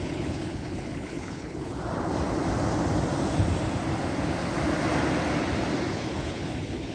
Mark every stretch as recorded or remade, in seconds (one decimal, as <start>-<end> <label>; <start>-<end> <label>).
0.0-1.8 remade; 1.8-5.9 recorded; 5.9-6.9 remade